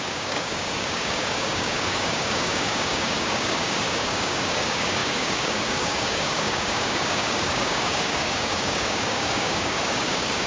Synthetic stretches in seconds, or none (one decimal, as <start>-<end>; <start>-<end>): 0.0-10.5